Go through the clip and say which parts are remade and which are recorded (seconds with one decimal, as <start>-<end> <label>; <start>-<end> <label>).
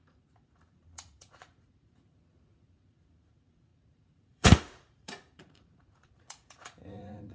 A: 0.0-7.3 remade